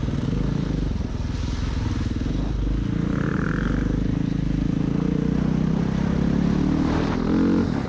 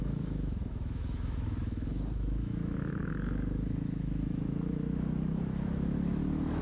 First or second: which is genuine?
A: first